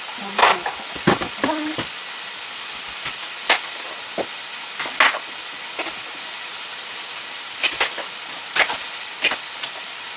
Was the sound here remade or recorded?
recorded